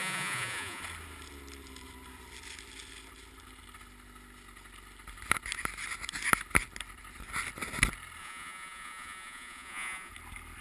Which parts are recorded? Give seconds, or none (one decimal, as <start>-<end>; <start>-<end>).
0.8-8.2; 10.1-10.6